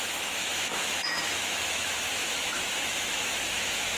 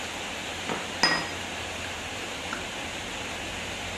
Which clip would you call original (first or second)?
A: second